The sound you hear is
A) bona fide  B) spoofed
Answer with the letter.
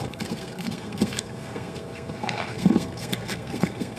B